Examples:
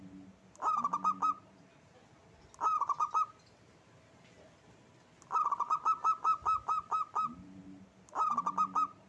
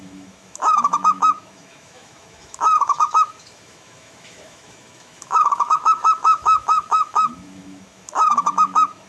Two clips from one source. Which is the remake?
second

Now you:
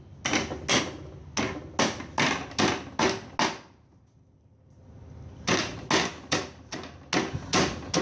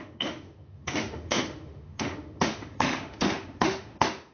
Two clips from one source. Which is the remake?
second